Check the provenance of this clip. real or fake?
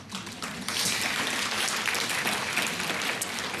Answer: real